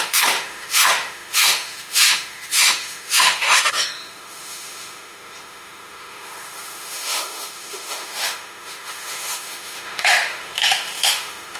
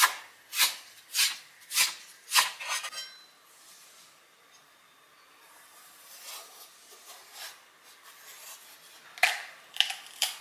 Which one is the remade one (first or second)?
first